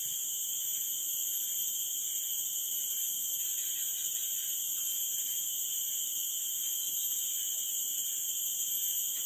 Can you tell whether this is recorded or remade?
recorded